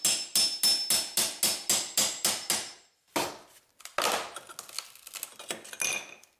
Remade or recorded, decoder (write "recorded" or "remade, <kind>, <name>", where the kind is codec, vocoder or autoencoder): recorded